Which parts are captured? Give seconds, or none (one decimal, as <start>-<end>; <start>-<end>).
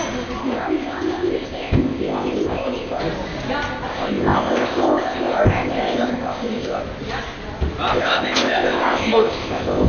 0.0-0.4; 3.0-3.9; 6.8-7.9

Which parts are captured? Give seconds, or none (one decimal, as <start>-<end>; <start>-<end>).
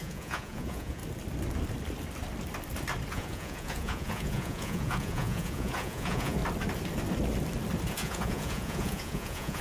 1.0-3.1; 6.4-7.9